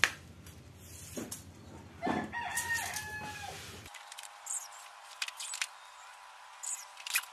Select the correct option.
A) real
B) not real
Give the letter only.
A